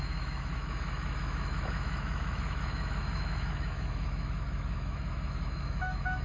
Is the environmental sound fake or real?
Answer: fake